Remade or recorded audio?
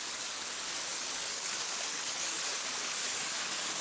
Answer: remade